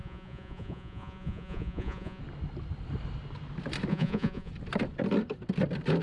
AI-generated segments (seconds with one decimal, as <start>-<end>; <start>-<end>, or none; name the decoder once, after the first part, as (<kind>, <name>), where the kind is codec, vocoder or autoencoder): 0.0-2.2 (vocoder, Vocos); 3.9-4.5